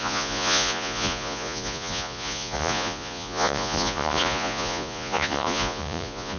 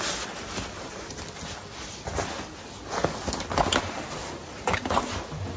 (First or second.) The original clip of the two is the second